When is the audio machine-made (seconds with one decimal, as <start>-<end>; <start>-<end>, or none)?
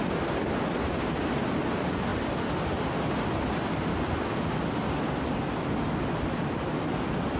0.8-1.3